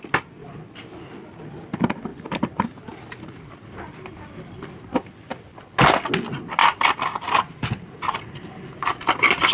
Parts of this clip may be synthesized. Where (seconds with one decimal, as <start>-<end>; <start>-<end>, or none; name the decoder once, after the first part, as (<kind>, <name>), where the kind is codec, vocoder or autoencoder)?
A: none